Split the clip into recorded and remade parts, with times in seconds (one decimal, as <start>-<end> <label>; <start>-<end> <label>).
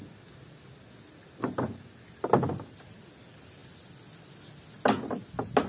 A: 0.0-5.7 recorded